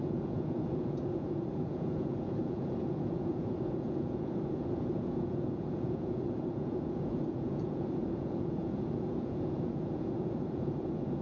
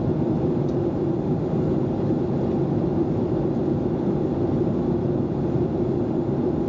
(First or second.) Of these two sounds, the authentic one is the second